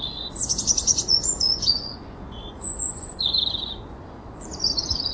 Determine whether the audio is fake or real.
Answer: fake